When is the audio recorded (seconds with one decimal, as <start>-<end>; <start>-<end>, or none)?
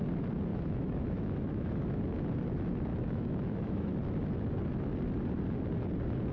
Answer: 0.0-0.5; 2.0-2.9; 3.9-6.3